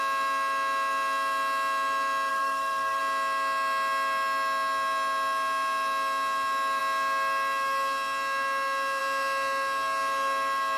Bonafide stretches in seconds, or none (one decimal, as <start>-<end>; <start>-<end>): 0.0-2.3; 3.0-10.8